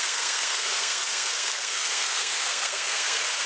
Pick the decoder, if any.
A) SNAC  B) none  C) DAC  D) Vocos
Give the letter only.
A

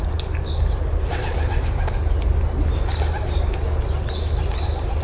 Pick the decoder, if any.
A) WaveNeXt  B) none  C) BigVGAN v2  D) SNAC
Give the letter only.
B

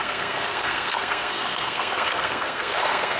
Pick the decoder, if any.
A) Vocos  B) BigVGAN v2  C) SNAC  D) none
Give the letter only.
C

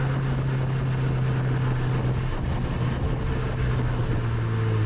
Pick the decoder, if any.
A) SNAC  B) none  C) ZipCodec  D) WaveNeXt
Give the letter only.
B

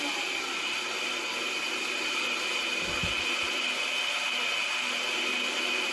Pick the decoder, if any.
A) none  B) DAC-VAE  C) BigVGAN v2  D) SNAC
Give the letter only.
A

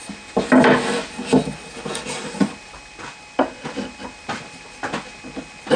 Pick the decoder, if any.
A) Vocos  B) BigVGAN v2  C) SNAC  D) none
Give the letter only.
D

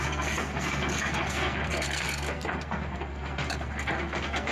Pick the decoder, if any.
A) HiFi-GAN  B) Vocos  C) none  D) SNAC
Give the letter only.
D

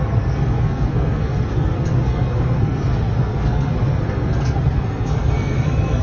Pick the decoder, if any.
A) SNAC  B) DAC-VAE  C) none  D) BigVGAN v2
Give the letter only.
A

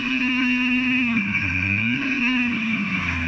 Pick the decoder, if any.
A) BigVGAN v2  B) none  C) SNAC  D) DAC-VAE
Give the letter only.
C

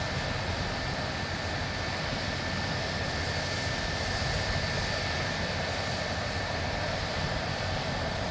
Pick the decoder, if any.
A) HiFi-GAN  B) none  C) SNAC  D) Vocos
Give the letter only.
B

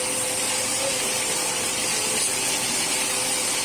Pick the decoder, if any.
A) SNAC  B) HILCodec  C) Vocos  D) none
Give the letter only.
D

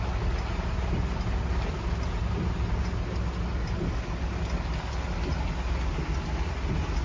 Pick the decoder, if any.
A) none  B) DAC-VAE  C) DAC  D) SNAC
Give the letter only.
A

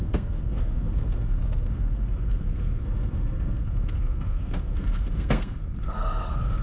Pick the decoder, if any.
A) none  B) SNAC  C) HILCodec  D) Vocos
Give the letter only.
B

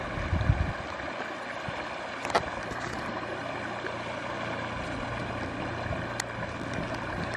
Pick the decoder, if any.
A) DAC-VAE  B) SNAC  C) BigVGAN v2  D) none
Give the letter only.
D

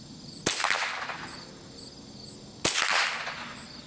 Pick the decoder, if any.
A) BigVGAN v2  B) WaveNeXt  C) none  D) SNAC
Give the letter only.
C